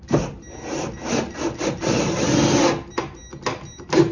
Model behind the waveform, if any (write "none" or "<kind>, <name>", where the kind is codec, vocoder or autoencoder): none